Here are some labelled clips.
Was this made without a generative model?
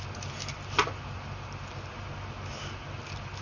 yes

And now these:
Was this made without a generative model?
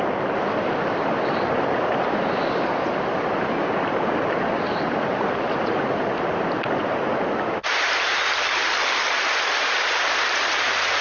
yes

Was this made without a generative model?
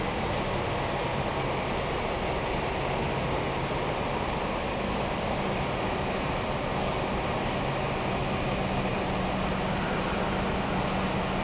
yes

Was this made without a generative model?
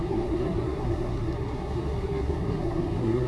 no